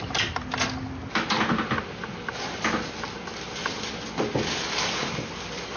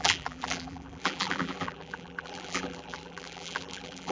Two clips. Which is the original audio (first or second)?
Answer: first